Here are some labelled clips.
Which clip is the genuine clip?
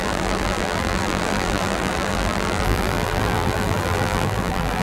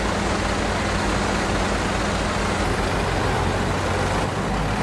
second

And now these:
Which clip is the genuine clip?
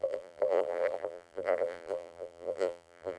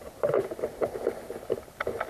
second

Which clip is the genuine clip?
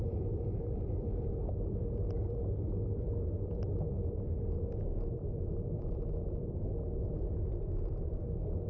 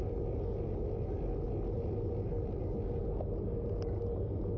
second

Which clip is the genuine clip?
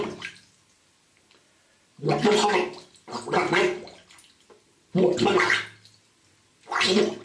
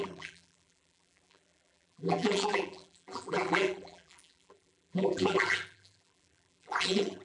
first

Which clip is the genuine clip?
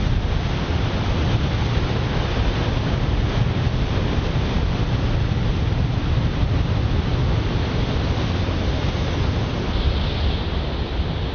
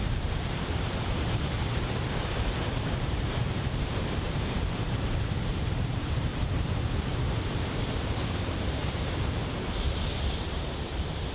first